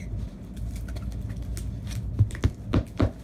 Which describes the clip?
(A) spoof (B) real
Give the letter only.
B